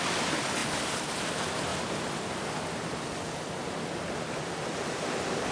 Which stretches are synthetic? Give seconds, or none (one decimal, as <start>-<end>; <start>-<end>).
none